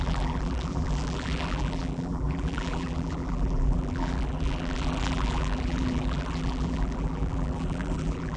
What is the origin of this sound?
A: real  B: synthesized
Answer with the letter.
B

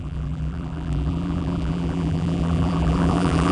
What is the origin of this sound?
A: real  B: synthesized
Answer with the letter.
B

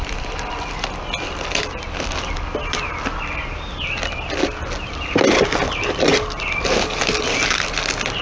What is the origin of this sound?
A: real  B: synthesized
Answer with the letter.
A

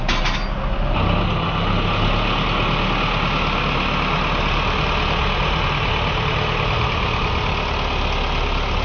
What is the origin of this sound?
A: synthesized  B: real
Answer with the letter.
B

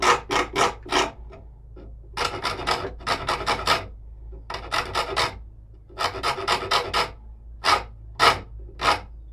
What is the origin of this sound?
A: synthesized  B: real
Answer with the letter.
B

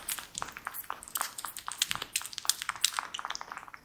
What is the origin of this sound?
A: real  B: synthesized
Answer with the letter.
A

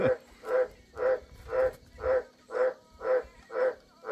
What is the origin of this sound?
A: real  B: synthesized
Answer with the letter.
B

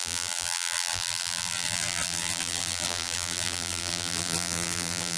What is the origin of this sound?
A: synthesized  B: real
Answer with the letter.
A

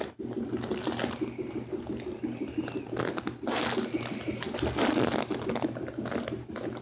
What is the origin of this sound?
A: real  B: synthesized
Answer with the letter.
A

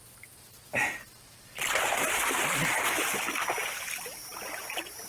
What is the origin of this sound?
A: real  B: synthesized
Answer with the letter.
A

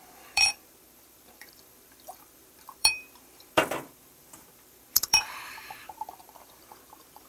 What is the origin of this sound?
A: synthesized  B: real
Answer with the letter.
A